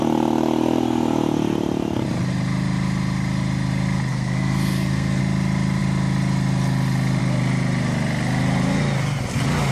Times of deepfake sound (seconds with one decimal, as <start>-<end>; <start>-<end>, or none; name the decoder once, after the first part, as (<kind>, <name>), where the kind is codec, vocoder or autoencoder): 4.1-5.2 (codec, SNAC)